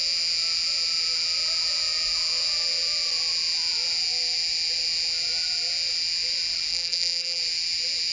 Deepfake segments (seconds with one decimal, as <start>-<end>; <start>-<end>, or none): 6.7-7.4

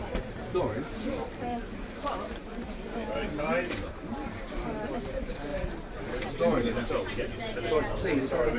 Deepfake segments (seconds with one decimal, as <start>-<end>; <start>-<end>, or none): 0.0-5.5; 6.3-8.6

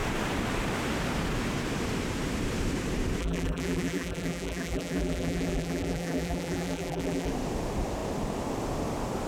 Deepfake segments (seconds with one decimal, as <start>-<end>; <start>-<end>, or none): 3.2-7.3